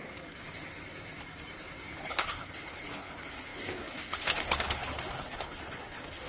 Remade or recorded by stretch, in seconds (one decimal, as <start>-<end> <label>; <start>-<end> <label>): 0.0-2.0 recorded; 2.0-6.3 remade